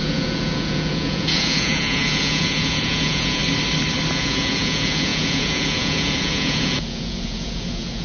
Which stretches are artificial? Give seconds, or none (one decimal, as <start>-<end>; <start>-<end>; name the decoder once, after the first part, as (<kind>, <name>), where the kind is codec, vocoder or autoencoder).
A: 0.0-3.4 (vocoder, Vocos); 4.1-8.0